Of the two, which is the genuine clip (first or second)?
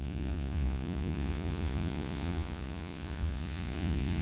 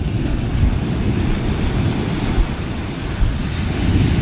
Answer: second